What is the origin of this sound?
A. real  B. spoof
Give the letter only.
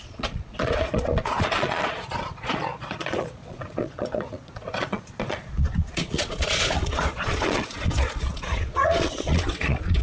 B